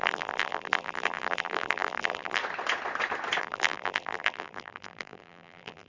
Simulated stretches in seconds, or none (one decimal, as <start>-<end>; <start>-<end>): 0.0-2.4; 3.4-5.9